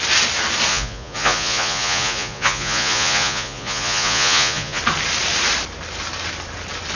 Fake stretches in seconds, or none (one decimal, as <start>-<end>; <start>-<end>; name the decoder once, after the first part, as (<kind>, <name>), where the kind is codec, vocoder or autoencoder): 0.7-4.8 (vocoder, Vocos)